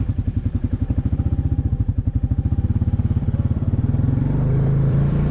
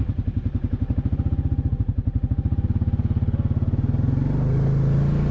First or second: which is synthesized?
first